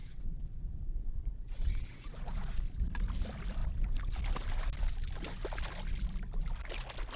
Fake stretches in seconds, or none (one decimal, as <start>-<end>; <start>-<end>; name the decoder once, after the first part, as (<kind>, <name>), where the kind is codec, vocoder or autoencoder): 0.0-2.6 (vocoder, Vocos)